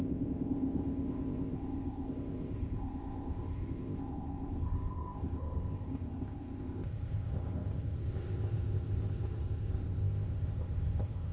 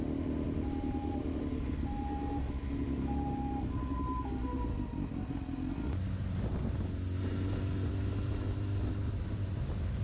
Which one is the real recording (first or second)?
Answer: second